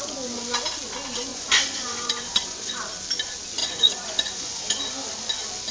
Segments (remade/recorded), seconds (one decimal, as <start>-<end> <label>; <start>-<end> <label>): 0.0-1.3 recorded; 1.3-2.8 remade; 2.8-3.6 recorded; 3.6-4.8 remade; 4.8-5.7 recorded